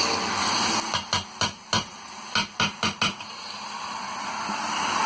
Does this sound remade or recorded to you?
recorded